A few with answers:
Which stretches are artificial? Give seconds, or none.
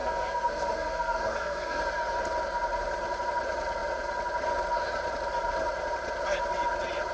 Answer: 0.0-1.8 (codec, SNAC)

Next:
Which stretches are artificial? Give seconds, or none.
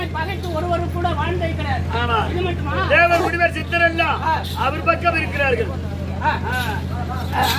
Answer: 1.7-2.3 (codec, DAC)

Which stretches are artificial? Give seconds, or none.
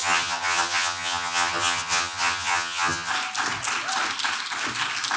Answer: 0.0-3.1 (vocoder, HiFi-GAN)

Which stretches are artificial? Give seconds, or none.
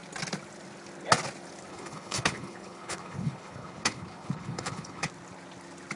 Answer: 1.7-5.1 (codec, HILCodec)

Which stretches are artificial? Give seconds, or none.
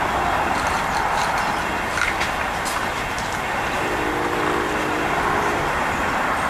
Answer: none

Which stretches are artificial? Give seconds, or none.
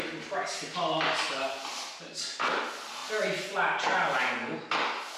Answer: none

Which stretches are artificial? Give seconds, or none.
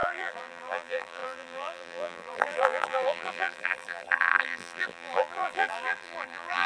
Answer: 0.0-6.7 (vocoder, BigVGAN v2)